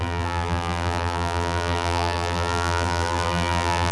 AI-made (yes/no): yes